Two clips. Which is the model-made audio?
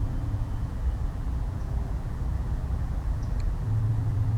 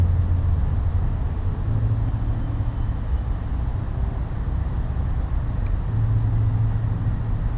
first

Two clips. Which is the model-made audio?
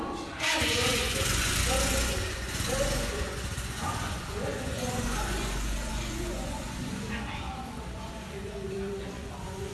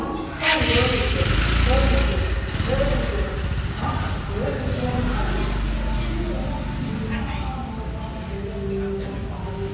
first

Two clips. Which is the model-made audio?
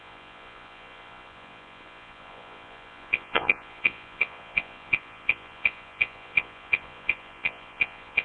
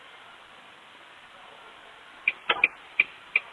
first